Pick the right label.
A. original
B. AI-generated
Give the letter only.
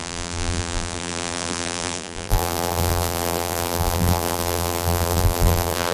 B